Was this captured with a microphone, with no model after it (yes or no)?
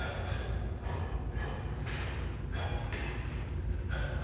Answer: yes